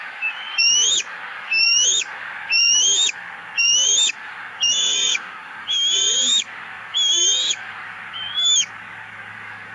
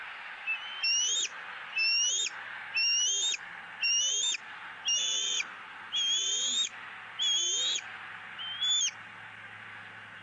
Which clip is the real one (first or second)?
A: second